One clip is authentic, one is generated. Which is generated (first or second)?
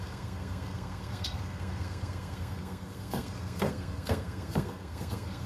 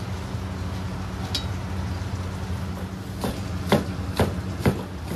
first